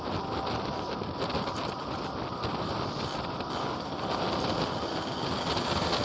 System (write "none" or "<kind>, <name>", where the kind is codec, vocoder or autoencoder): none